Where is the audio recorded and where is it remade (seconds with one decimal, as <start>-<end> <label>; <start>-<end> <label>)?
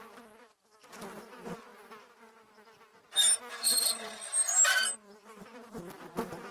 0.0-6.5 recorded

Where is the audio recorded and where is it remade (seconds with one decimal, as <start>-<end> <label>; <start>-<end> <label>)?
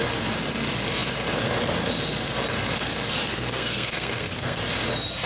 0.0-3.3 recorded; 3.3-4.6 remade; 4.6-5.3 recorded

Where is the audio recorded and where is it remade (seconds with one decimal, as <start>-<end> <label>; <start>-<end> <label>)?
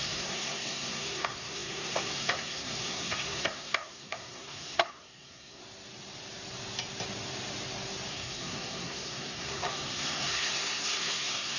0.0-5.6 remade; 5.6-8.1 recorded; 8.1-11.6 remade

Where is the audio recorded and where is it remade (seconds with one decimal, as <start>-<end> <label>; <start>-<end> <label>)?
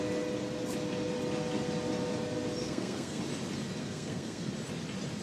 0.0-2.6 recorded; 2.6-3.2 remade; 3.2-3.8 recorded; 3.8-4.5 remade; 4.5-5.2 recorded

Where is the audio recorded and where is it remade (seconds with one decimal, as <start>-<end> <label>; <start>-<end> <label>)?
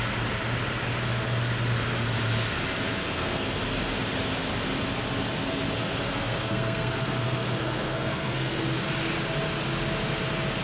0.0-3.0 recorded; 3.0-3.6 remade; 3.6-6.1 recorded; 6.1-8.6 remade; 8.6-10.6 recorded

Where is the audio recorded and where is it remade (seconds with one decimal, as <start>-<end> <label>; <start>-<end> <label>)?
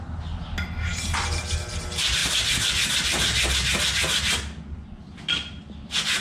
0.0-6.2 recorded